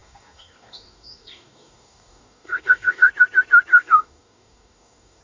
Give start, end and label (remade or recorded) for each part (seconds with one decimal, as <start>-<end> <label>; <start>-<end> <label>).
0.0-3.1 remade; 3.1-3.7 recorded; 3.7-5.2 remade